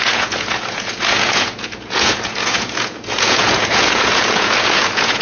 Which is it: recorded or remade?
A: remade